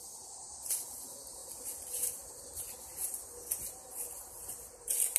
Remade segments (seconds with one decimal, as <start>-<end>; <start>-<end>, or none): 1.4-2.6